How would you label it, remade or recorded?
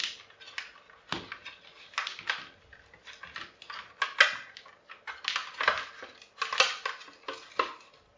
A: recorded